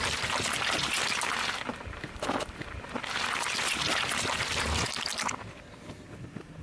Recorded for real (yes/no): no